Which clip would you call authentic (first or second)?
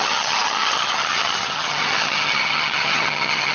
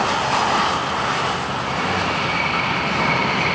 second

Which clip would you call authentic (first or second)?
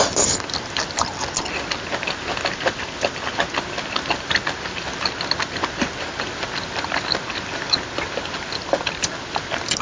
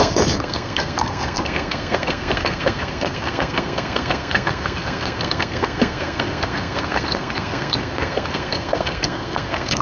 first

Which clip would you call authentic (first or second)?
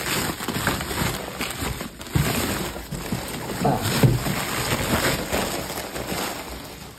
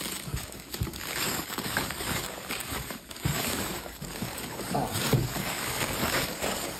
first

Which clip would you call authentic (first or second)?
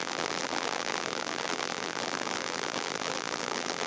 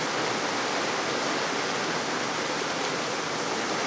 second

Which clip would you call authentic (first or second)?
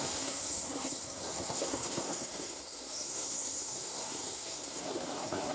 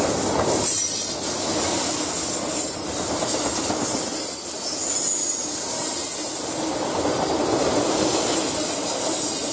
second